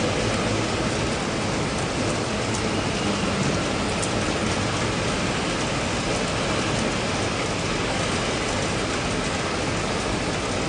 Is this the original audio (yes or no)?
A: yes